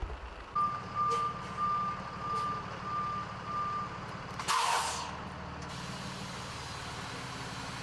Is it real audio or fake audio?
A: real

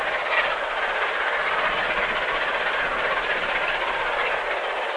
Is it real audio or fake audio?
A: real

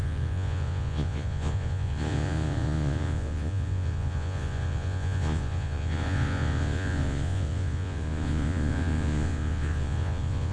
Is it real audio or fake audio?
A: fake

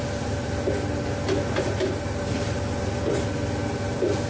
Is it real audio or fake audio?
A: real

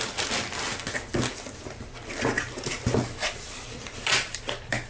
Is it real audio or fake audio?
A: real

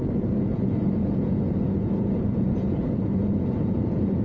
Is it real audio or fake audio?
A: fake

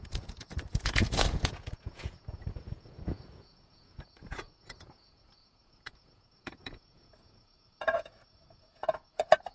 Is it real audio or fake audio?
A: fake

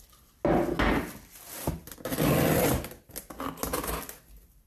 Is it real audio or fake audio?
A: real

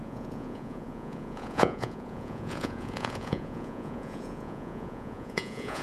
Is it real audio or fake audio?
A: fake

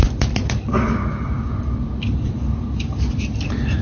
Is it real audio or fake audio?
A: real